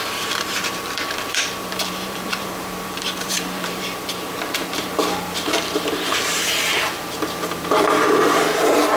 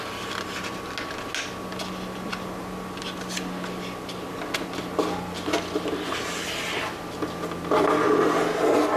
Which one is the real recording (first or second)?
second